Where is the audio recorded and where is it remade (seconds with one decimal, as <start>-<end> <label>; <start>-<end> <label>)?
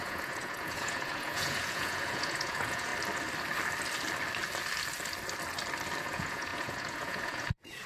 0.0-2.9 remade; 2.9-6.0 recorded; 6.0-7.9 remade